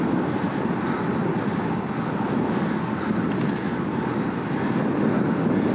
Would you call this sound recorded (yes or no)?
yes